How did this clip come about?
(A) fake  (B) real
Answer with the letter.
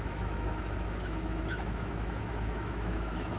A